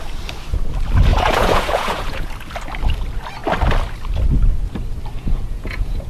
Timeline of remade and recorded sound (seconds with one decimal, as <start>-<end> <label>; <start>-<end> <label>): 0.0-1.1 recorded; 1.1-2.3 remade; 2.3-5.2 recorded; 5.2-6.1 remade

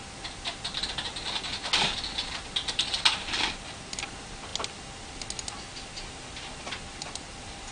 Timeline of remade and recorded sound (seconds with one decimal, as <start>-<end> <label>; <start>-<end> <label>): 0.0-7.7 recorded

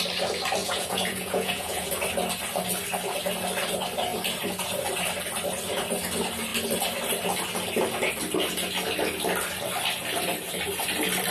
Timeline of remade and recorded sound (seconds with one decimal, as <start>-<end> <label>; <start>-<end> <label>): 0.0-0.6 recorded; 0.6-1.9 remade; 1.9-11.3 recorded

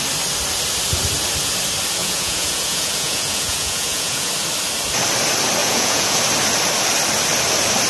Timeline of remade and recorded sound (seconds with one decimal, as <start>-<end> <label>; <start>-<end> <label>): 0.0-2.0 recorded; 2.0-4.3 remade; 4.3-5.6 recorded; 5.6-6.2 remade; 6.2-7.9 recorded

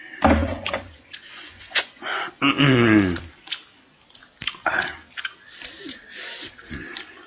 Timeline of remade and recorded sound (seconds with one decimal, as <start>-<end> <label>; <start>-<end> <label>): 0.0-0.4 recorded; 0.4-2.3 remade; 2.3-7.3 recorded

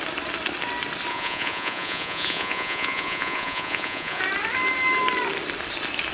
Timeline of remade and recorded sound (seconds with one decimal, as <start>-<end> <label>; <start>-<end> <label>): 0.0-1.1 recorded; 1.1-4.2 remade; 4.2-6.1 recorded